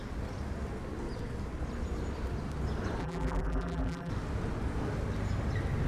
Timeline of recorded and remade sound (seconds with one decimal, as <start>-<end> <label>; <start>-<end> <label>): 0.0-3.0 recorded; 3.0-4.1 remade; 4.1-5.9 recorded